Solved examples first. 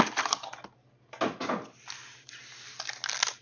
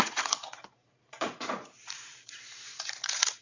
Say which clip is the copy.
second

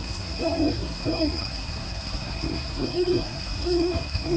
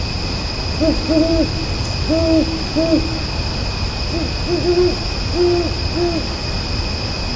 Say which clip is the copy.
first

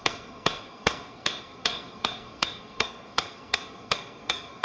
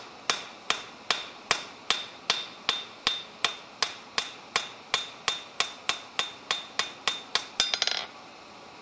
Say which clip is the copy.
first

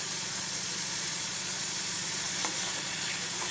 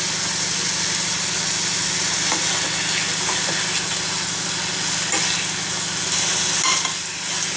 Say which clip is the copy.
first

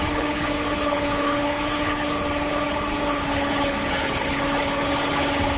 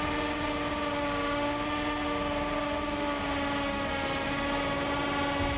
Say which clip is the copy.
first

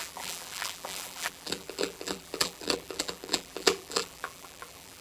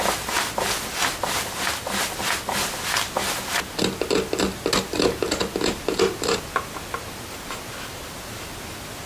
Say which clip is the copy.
first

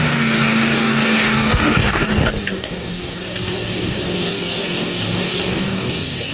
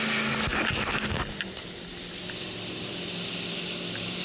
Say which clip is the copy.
first